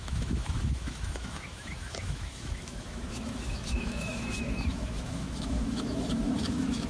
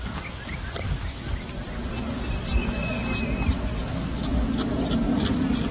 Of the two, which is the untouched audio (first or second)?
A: second